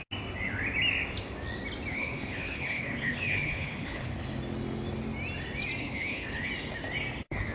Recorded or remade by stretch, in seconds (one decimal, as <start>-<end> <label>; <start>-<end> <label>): 0.0-1.9 recorded; 1.9-4.1 remade; 4.1-5.8 recorded; 5.8-6.5 remade; 6.5-7.5 recorded